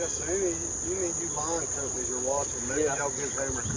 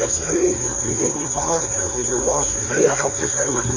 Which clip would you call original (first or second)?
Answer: first